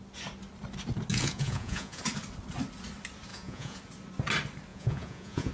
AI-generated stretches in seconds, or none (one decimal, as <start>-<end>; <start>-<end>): 1.1-2.0; 3.3-3.8; 4.7-5.5